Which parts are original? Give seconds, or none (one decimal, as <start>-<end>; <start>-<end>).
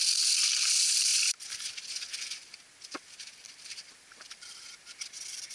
none